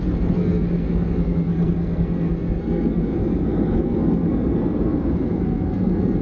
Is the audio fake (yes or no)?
yes